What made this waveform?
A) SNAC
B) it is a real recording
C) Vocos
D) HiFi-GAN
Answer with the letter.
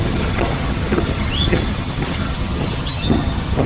D